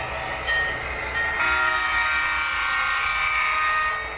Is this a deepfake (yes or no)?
no